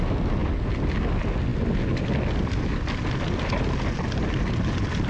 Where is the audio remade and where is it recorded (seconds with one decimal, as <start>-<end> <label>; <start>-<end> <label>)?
0.0-5.1 recorded